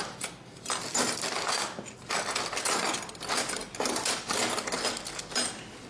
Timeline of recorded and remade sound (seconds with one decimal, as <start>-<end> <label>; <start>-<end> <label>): 0.0-5.9 recorded